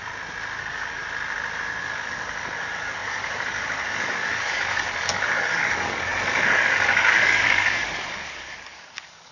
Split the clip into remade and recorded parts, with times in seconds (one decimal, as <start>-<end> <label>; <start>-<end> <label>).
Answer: 0.0-0.6 recorded; 0.6-1.0 remade; 1.0-1.8 recorded; 1.8-9.3 remade